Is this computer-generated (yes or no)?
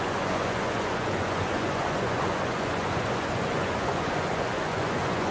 yes